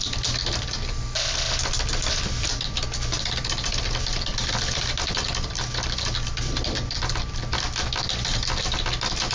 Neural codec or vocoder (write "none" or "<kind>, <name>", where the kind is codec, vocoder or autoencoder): none